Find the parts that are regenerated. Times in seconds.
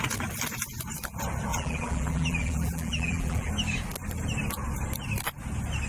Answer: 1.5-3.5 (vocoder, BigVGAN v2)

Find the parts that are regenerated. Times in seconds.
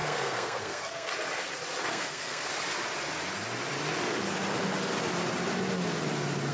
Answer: 0.0-1.1 (codec, SNAC); 1.9-2.5